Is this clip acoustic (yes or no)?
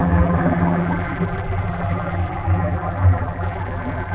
no